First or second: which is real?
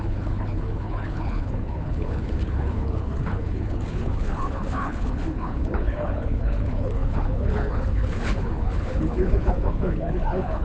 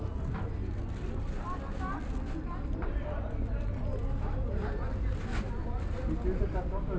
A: second